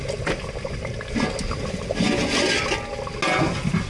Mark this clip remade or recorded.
recorded